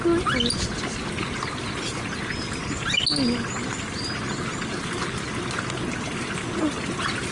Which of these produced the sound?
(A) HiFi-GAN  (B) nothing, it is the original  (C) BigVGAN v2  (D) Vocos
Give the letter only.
B